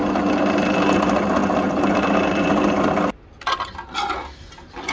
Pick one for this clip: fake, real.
real